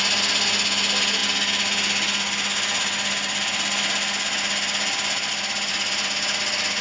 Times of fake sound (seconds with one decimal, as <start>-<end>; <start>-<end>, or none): none

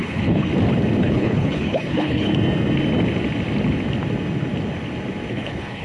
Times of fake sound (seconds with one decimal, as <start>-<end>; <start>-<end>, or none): 0.0-0.5; 1.0-2.3; 5.3-5.8

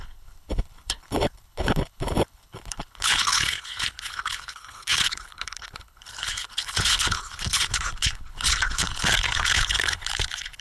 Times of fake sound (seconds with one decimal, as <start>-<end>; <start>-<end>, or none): 0.0-10.6

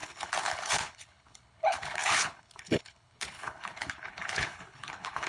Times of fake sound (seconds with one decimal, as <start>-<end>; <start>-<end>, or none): 0.0-5.3

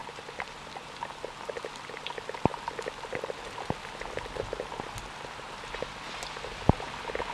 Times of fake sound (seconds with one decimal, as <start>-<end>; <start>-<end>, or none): none

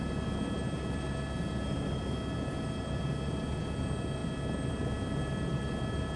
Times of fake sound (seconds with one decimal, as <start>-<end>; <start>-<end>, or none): none

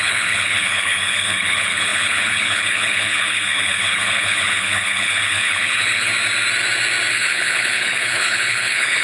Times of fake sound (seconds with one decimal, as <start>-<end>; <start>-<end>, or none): 0.0-6.1; 7.1-9.0

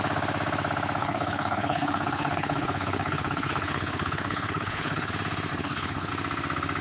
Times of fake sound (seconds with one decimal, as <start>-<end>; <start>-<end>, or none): 1.0-5.1; 5.5-6.1